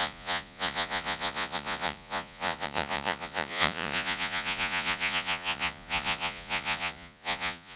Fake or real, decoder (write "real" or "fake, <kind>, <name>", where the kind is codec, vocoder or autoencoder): fake, vocoder, Vocos